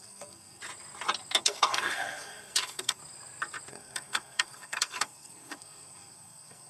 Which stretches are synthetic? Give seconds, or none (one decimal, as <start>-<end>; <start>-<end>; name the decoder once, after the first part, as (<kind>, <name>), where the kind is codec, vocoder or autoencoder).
0.0-0.6 (codec, SNAC); 1.4-3.0; 3.7-6.7